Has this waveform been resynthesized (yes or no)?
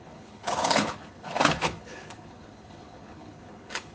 yes